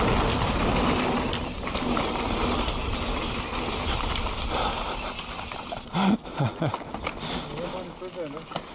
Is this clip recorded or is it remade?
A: recorded